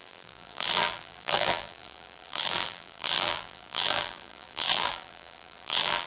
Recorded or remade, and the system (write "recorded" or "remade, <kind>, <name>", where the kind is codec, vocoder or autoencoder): remade, vocoder, BigVGAN v2